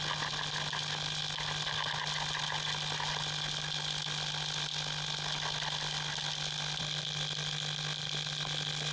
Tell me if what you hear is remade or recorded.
recorded